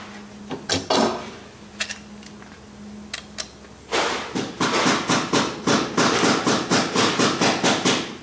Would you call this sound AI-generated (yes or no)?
no